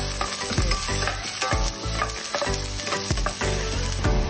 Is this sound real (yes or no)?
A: yes